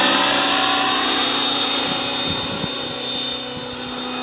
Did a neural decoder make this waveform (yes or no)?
no